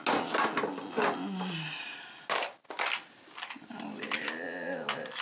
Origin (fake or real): real